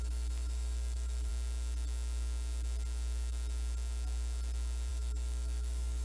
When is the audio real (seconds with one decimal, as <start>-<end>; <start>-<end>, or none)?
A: 1.3-4.9